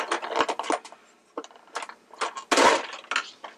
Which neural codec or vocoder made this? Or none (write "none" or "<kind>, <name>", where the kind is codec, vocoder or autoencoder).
none